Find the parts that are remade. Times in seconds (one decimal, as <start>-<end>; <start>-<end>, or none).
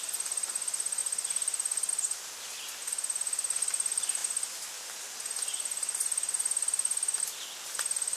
none